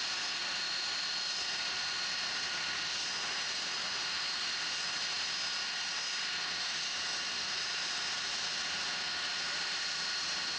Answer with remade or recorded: recorded